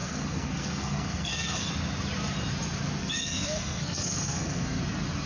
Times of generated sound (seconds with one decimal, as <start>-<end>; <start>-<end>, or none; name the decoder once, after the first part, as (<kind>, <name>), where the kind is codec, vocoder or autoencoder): 0.0-1.7 (codec, SNAC); 3.0-4.8